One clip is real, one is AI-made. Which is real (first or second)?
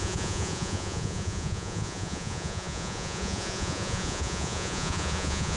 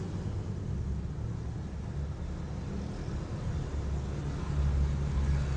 second